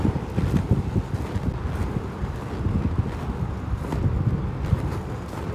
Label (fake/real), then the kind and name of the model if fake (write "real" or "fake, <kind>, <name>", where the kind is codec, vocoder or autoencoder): real